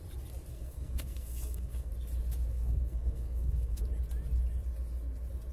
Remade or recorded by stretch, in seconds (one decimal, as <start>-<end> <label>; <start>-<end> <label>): 0.0-0.5 recorded; 0.5-1.9 remade; 1.9-2.5 recorded; 2.5-3.8 remade; 3.8-5.5 recorded